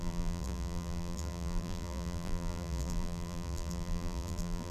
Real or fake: fake